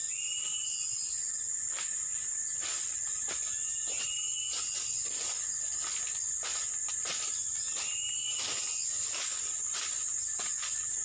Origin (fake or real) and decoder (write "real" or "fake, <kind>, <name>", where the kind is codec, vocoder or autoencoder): real